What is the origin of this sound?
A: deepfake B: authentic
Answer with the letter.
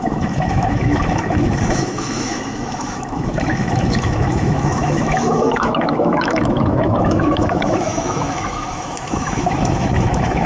A